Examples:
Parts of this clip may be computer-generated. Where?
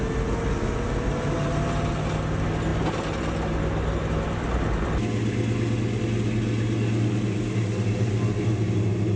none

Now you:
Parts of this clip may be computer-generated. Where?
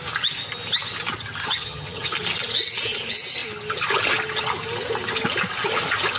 1.4-2.1 (vocoder, HiFi-GAN)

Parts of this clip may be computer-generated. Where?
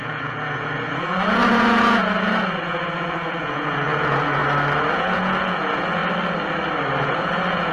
0.0-4.4 (vocoder, Vocos); 4.9-6.0; 7.0-7.7